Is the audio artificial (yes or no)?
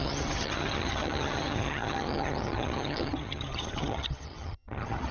yes